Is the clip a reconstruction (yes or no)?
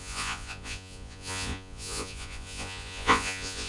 yes